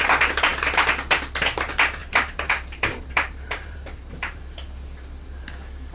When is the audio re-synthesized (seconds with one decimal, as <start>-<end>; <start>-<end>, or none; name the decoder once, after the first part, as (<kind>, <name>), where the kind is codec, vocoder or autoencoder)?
2.0-4.4 (vocoder, BigVGAN v2)